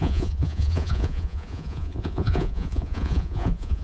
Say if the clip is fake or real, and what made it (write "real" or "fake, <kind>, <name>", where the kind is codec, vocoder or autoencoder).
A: fake, vocoder, Vocos